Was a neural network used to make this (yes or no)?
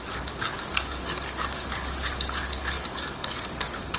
yes